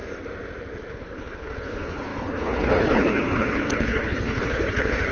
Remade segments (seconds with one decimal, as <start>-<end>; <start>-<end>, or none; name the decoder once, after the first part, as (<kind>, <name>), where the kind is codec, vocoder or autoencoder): 0.9-5.1 (codec, HILCodec)